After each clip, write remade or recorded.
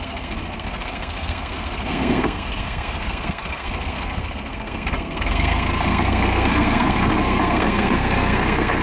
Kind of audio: remade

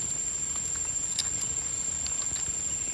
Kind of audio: recorded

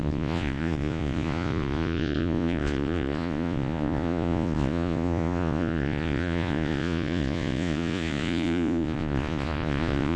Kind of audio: remade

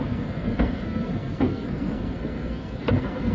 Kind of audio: remade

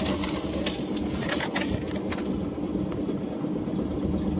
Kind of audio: recorded